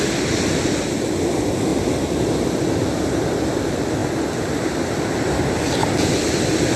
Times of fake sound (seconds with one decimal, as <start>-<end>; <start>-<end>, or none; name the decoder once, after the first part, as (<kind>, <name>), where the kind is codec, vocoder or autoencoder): none